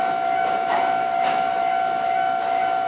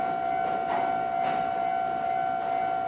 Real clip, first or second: second